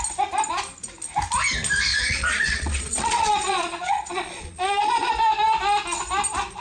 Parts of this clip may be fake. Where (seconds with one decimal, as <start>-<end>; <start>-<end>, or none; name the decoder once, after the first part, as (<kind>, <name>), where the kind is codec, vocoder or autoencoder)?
1.9-5.1 (vocoder, Vocos)